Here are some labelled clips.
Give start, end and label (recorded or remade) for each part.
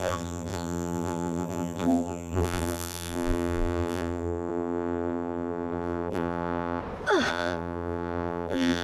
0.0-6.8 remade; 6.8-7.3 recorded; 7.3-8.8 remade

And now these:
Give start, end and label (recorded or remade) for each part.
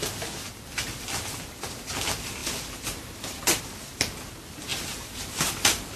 0.0-2.4 recorded; 2.4-3.6 remade; 3.6-4.7 recorded; 4.7-6.0 remade